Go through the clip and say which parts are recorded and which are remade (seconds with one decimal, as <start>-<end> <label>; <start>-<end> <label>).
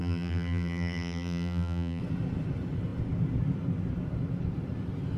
0.0-2.0 remade; 2.0-5.2 recorded